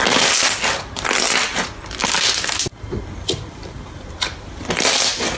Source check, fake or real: fake